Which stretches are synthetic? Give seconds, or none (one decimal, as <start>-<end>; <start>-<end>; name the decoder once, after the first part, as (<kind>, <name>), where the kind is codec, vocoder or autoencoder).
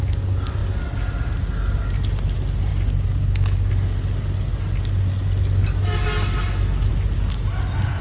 none